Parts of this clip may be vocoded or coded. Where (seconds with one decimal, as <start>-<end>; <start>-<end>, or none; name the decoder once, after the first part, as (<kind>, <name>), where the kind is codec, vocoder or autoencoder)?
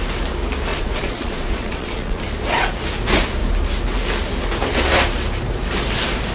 0.7-2.2 (vocoder, Vocos)